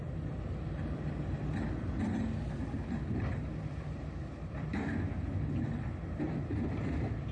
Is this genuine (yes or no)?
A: yes